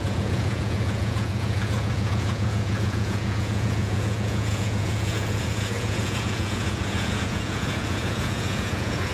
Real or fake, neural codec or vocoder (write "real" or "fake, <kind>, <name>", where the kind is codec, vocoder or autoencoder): fake, vocoder, Vocos